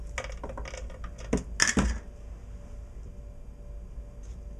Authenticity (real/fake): real